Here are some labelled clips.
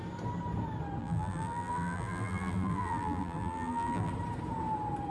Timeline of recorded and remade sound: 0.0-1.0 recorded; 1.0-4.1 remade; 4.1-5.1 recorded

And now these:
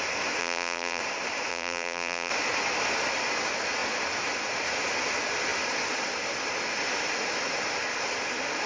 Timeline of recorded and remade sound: 0.0-0.4 recorded; 0.4-1.0 remade; 1.0-1.5 recorded; 1.5-2.3 remade; 2.3-8.7 recorded

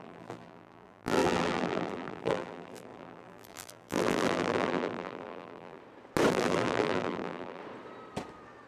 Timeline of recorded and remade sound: 0.0-5.8 remade; 5.8-6.3 recorded; 6.3-7.6 remade; 7.6-8.7 recorded

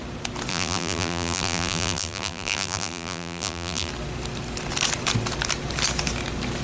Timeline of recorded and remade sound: 0.0-0.5 recorded; 0.5-3.9 remade; 3.9-6.6 recorded

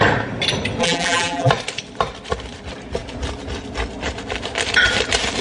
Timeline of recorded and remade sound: 0.0-0.8 recorded; 0.8-1.5 remade; 1.5-5.4 recorded

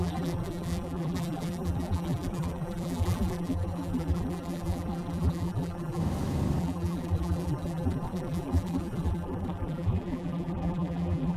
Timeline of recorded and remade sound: 0.0-6.0 remade; 6.0-6.6 recorded; 6.6-11.4 remade

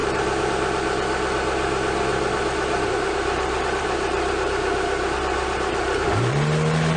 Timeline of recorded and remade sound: 0.0-0.5 remade; 0.5-2.1 recorded; 2.1-6.3 remade; 6.3-7.0 recorded

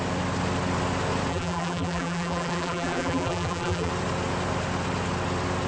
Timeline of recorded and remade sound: 0.0-1.3 recorded; 1.3-3.9 remade; 3.9-5.7 recorded